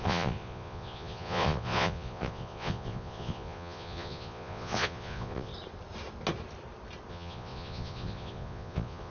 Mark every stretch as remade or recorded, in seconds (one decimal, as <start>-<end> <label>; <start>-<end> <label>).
0.0-5.5 remade; 5.5-7.1 recorded; 7.1-9.1 remade